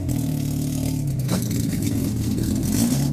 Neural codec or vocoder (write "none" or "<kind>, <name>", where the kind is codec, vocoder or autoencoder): codec, SNAC